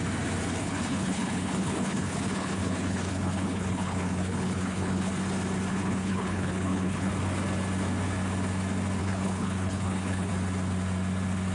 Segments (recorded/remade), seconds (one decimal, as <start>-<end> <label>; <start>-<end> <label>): 0.0-0.6 recorded; 0.6-5.1 remade; 5.1-5.7 recorded; 5.7-7.1 remade; 7.1-9.0 recorded; 9.0-10.3 remade; 10.3-11.5 recorded